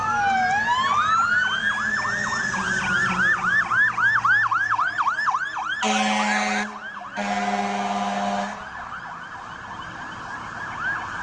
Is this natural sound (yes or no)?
yes